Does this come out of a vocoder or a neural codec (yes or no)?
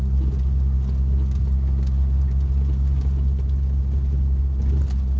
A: no